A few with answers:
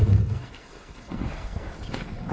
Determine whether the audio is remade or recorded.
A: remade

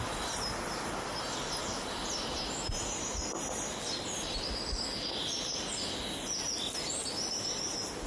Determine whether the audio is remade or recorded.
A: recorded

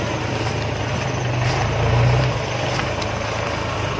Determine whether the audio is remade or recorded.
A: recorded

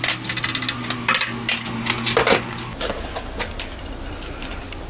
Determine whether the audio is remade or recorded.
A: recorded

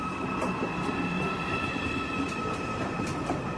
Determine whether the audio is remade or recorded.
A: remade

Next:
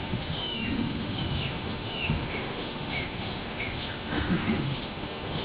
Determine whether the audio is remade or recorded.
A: remade